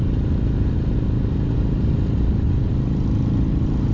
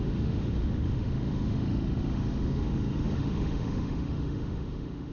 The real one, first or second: first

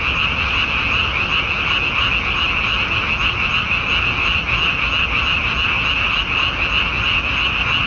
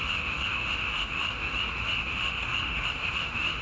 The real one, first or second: first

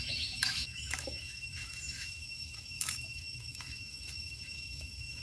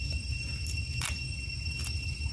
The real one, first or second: second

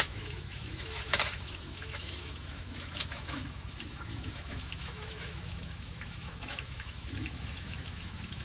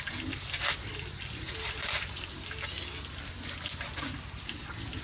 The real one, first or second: second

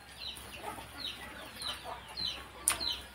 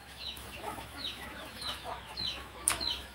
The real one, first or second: first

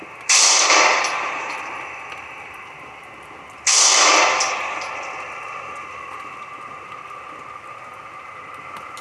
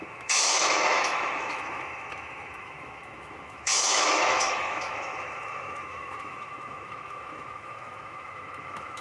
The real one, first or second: first